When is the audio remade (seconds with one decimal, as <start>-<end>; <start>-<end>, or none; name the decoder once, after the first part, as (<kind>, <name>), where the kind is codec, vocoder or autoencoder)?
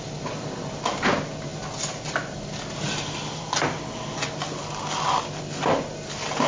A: none